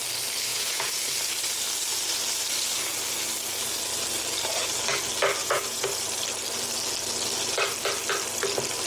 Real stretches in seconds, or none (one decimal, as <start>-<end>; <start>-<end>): 0.0-0.5; 1.0-5.4; 5.9-8.9